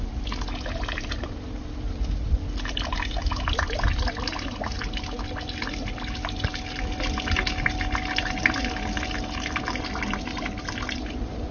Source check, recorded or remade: recorded